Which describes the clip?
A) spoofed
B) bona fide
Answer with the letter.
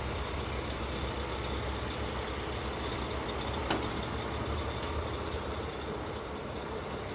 B